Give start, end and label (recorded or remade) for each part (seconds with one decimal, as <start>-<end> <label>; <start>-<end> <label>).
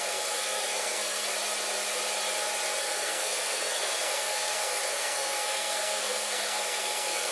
0.0-1.3 remade; 1.3-2.8 recorded; 2.8-7.3 remade